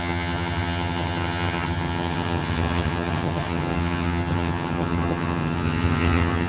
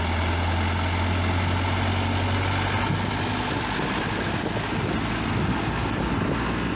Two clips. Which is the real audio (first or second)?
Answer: second